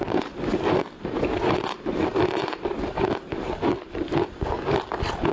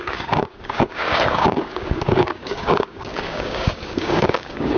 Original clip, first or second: first